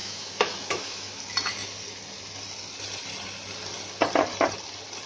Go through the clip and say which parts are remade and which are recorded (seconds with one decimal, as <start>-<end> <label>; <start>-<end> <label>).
0.0-1.2 remade; 1.2-5.1 recorded